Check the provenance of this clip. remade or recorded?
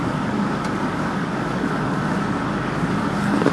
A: remade